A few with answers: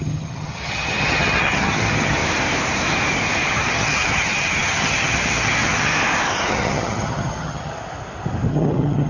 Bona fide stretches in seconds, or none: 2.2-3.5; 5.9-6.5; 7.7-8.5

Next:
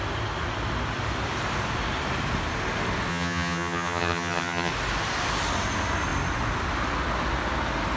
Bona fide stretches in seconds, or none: 0.0-3.1; 4.7-8.0